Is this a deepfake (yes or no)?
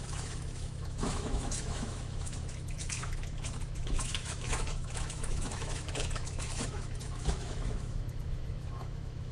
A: yes